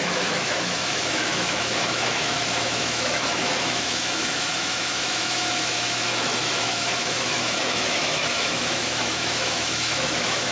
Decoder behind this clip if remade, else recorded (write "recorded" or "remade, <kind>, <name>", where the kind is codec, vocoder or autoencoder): remade, autoencoder, DAC-VAE